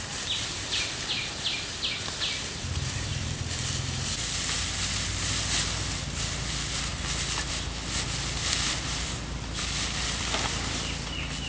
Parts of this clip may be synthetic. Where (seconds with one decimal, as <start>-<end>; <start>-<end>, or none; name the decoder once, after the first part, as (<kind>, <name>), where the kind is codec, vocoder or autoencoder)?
none